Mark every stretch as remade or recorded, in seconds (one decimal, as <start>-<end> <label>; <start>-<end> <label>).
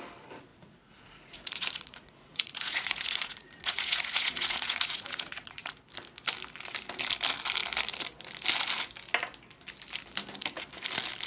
0.0-0.5 recorded; 0.5-5.7 remade; 5.7-11.3 recorded